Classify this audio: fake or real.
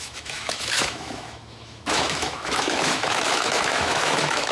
fake